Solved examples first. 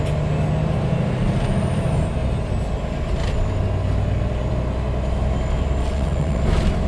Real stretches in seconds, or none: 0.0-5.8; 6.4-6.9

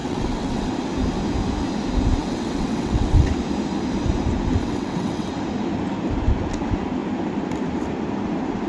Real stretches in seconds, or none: 0.7-2.2; 3.3-4.6; 5.3-8.7